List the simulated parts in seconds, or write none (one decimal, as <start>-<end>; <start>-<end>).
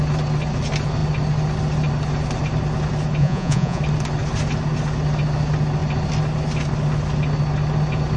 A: 3.2-3.8